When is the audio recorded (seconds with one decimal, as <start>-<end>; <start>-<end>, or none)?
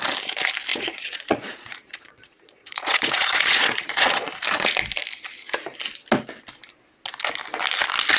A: 0.0-0.7; 4.3-8.2